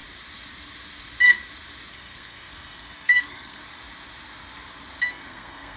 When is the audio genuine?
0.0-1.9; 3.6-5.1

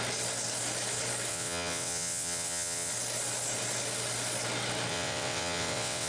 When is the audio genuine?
0.0-1.3; 2.9-4.9

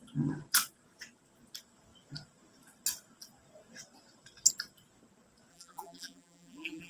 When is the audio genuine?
0.0-5.5

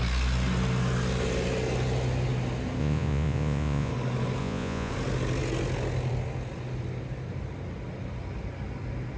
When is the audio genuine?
0.0-2.8; 3.9-4.4; 4.9-9.2